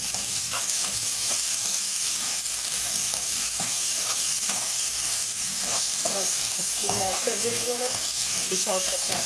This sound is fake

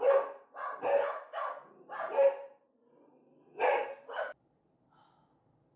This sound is real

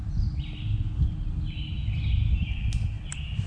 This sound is real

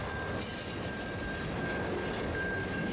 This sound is real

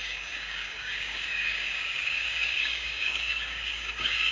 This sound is fake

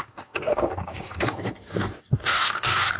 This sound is fake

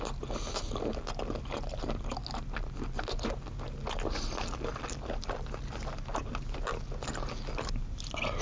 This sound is real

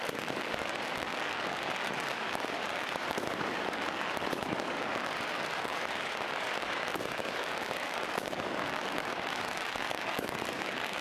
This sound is fake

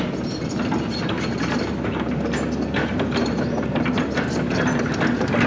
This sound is real